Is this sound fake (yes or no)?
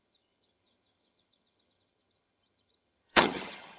yes